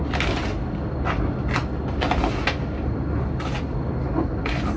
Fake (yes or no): no